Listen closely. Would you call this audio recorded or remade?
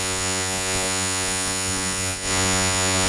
remade